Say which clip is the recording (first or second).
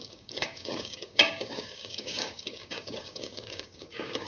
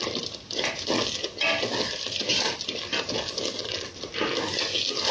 second